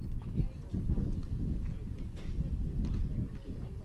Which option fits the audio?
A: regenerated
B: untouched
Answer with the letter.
B